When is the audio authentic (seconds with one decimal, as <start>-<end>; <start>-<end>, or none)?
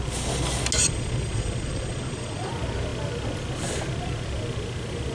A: 0.0-0.8; 2.5-5.1